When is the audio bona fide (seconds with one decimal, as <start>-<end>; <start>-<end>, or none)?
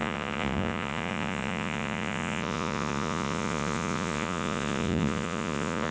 none